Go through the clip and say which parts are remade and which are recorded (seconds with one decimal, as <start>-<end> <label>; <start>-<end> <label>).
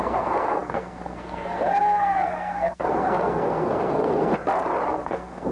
0.0-4.3 remade; 4.3-4.9 recorded; 4.9-5.5 remade